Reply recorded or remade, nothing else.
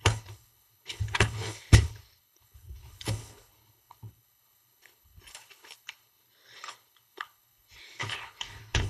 remade